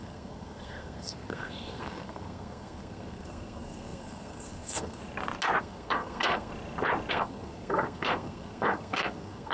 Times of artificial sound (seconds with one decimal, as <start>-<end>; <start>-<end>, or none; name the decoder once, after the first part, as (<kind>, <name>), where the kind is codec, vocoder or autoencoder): 0.0-5.0 (codec, SNAC); 5.6-6.5; 7.1-9.5